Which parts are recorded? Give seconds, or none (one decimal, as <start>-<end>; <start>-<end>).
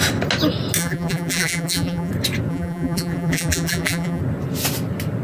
0.0-0.8; 2.1-2.5; 4.2-5.2